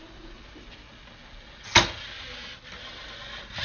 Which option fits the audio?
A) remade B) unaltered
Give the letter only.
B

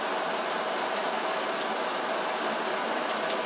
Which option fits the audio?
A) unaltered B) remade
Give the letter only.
A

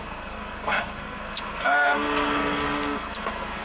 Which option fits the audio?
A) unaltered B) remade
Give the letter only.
B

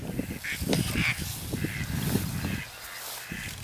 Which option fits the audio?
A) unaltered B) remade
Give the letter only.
A